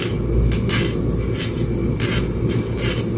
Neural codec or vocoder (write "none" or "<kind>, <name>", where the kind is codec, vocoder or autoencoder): none